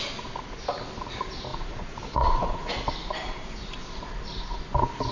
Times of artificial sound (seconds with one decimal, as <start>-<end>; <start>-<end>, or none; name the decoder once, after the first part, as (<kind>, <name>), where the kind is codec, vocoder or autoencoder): 1.5-2.7 (vocoder, Vocos)

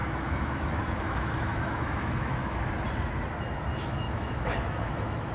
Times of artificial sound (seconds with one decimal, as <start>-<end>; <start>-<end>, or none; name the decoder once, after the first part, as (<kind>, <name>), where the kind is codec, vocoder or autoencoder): 0.0-2.7 (autoencoder, DAC-VAE); 3.7-5.3